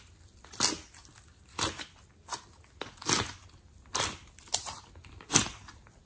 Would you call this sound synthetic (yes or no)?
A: no